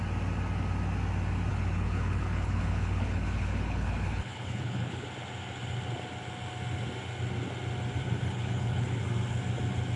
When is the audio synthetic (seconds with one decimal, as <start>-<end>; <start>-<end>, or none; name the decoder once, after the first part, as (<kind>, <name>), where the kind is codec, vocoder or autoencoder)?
1.5-5.0 (codec, HILCodec); 8.0-9.0